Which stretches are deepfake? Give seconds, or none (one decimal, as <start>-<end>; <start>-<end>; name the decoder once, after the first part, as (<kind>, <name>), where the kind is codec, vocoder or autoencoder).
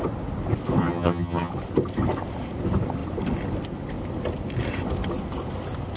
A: 0.8-1.5 (vocoder, HiFi-GAN)